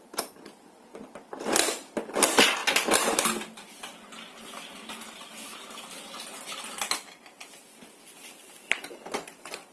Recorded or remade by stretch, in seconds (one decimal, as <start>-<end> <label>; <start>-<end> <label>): 0.0-9.7 recorded